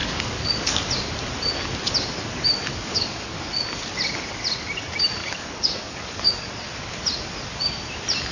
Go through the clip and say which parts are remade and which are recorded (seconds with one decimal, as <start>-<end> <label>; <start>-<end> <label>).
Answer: 0.0-0.9 remade; 0.9-2.7 recorded; 2.7-3.4 remade; 3.4-5.2 recorded; 5.2-6.5 remade; 6.5-8.3 recorded